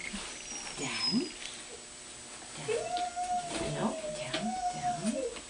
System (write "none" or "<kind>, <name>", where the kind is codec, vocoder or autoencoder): none